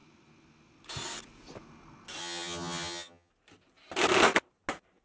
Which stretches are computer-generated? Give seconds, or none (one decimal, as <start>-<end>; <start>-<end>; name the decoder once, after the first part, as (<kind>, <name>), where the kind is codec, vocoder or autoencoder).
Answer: 2.2-3.3 (vocoder, HiFi-GAN)